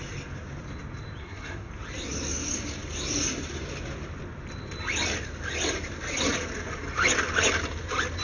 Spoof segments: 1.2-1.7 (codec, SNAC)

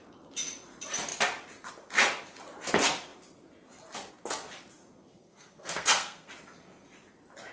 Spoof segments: 5.1-6.3 (codec, SNAC)